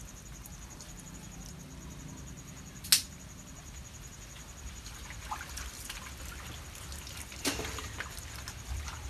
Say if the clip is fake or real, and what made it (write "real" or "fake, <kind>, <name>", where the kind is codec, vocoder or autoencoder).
real